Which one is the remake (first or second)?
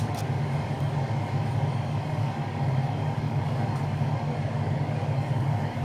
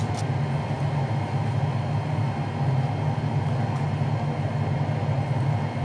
first